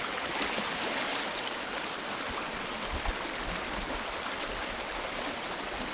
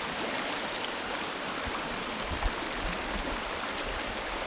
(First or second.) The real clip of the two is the first